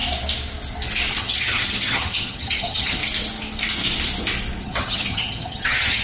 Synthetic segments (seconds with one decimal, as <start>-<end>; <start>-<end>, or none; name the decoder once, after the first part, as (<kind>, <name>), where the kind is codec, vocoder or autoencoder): 1.2-3.0 (vocoder, HiFi-GAN); 4.6-6.0